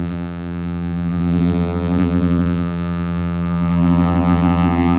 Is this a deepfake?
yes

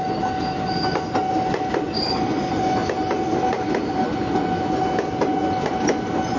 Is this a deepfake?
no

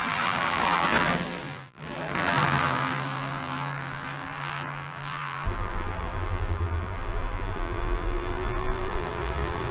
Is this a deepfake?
yes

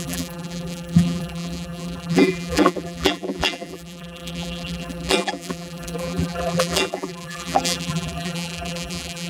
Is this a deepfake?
yes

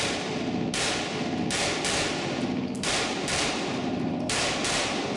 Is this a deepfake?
no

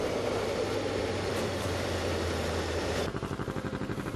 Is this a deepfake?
yes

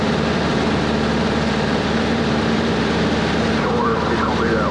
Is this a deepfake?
yes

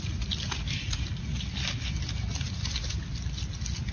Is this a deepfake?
no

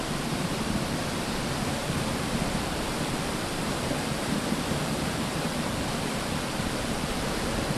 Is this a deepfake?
yes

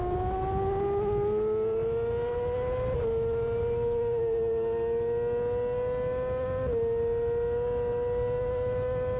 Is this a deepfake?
no